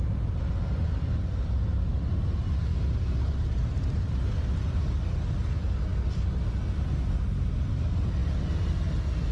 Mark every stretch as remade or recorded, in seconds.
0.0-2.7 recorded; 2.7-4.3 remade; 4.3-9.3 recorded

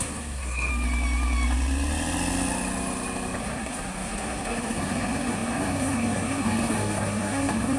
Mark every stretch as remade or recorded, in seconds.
0.0-0.7 remade; 0.7-3.4 recorded; 3.4-7.8 remade

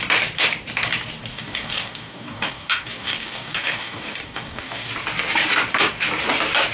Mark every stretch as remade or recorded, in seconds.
0.0-1.3 recorded; 1.3-4.9 remade; 4.9-6.7 recorded